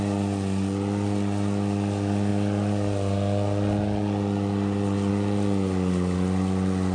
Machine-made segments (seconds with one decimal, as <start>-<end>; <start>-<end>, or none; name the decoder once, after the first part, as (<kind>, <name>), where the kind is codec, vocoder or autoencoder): none